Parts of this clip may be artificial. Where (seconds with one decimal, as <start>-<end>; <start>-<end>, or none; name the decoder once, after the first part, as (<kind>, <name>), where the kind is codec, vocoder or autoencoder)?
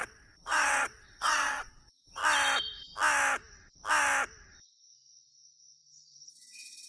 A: 0.0-2.2 (vocoder, WaveNeXt); 6.3-6.9